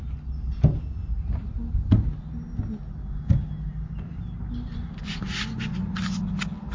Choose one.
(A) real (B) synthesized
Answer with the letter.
A